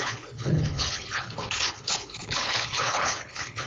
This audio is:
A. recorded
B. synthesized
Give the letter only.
B